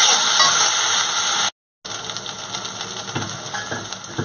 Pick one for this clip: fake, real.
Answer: real